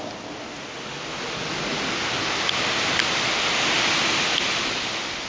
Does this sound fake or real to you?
real